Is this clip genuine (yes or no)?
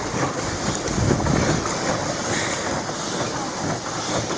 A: yes